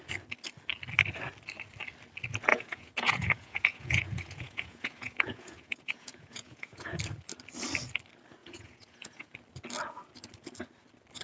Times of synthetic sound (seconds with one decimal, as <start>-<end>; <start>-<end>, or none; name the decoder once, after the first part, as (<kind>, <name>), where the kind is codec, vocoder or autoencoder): 2.5-7.0 (vocoder, Vocos); 8.4-9.3

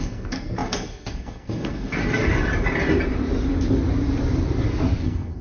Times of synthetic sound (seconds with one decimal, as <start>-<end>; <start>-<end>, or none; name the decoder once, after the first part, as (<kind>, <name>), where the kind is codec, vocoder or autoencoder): 0.0-2.0 (codec, SNAC); 5.0-5.4

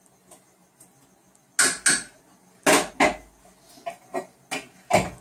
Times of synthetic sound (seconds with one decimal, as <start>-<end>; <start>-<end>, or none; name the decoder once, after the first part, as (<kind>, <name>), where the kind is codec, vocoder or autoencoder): none

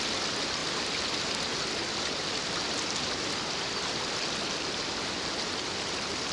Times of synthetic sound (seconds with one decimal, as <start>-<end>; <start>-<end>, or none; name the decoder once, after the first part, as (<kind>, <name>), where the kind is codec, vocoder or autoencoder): none

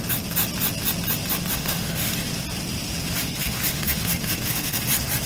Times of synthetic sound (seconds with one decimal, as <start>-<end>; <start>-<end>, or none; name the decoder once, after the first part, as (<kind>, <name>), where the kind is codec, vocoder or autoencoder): 1.5-2.1 (autoencoder, DAC-VAE); 3.2-4.8

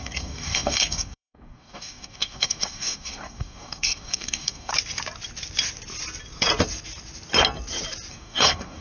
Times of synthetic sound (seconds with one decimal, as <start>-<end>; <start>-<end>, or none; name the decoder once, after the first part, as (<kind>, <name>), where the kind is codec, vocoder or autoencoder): 0.0-4.7 (codec, DAC); 8.1-8.8

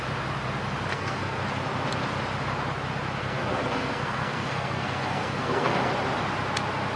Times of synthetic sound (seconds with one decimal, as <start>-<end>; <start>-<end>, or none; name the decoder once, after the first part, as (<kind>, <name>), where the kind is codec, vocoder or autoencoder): 0.9-1.4 (codec, SNAC); 3.2-5.9